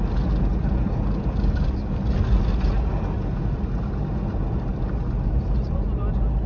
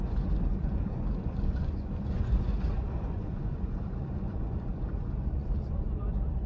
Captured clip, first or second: first